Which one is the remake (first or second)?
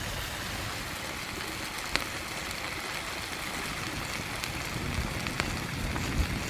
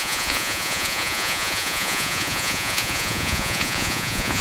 second